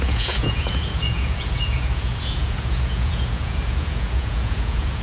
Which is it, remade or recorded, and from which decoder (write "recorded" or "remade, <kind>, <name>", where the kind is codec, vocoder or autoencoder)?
remade, vocoder, Vocos